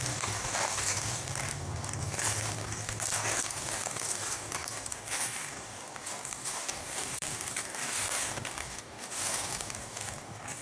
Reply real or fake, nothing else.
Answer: fake